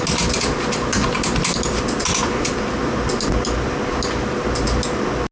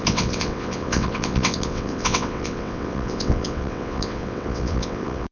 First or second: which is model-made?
second